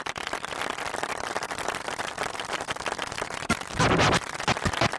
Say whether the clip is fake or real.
fake